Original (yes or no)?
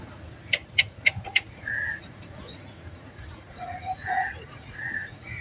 no